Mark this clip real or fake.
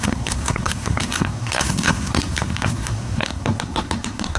fake